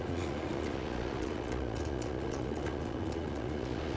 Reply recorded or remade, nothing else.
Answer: remade